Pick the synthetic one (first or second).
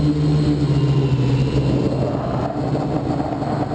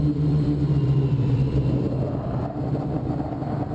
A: second